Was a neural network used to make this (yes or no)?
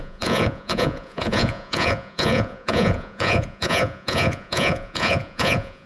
yes